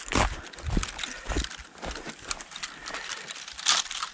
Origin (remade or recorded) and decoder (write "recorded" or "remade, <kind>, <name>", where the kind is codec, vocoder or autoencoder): recorded